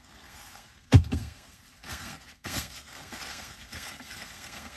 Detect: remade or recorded remade